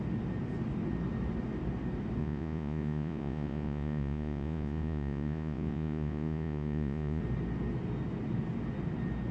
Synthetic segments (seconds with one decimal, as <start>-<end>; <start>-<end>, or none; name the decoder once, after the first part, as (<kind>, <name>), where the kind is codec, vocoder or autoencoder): 2.2-7.2 (vocoder, Vocos)